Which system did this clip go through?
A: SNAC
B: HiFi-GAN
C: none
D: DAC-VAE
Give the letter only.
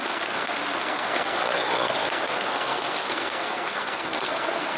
A